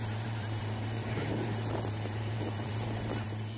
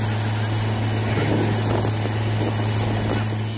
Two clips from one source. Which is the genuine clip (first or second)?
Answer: second